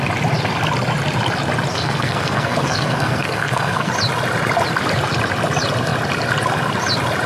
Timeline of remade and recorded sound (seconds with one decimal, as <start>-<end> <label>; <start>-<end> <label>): 0.0-1.7 recorded; 1.7-3.9 remade; 3.9-7.3 recorded